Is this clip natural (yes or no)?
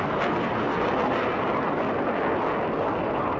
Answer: yes